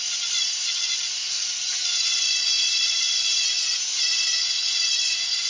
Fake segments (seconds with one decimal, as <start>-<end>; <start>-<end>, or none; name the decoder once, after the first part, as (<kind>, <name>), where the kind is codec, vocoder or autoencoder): 0.0-5.5 (vocoder, Vocos)